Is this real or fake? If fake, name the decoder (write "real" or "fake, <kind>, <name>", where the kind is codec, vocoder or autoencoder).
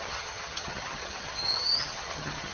fake, vocoder, HiFi-GAN